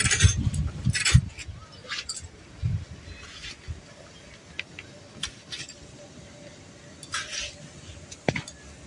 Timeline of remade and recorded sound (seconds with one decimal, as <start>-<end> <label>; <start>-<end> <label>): 0.0-8.9 recorded